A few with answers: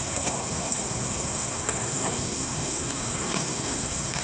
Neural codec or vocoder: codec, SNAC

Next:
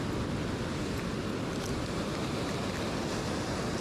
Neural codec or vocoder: none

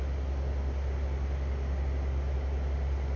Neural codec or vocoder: none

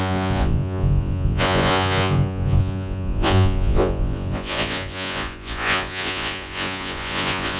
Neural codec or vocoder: vocoder, Vocos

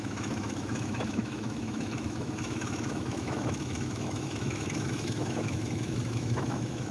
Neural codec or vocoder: autoencoder, DAC-VAE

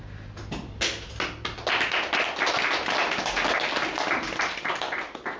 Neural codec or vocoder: none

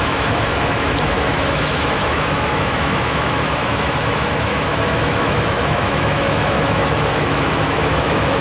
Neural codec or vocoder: autoencoder, DAC-VAE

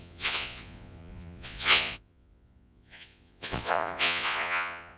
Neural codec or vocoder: vocoder, Vocos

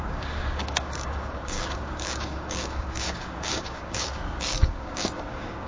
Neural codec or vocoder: codec, DAC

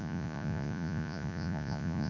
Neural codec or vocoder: vocoder, Vocos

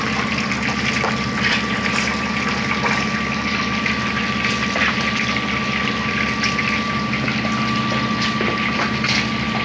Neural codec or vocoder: none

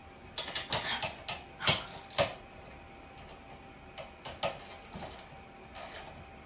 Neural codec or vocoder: none